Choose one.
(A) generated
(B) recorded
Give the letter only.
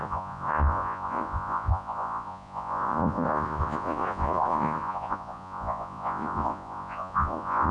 A